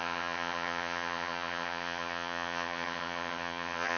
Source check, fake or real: fake